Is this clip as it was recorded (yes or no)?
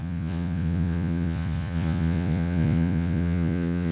no